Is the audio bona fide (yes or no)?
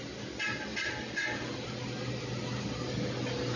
yes